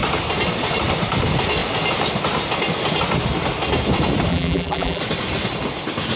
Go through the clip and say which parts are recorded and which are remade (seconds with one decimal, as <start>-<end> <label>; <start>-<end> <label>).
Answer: 0.0-4.3 recorded; 4.3-5.0 remade; 5.0-6.2 recorded